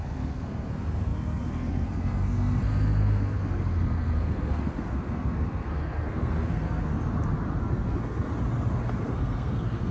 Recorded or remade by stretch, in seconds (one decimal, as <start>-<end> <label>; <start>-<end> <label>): 0.0-6.9 remade; 6.9-7.6 recorded; 7.6-8.3 remade; 8.3-9.0 recorded; 9.0-9.9 remade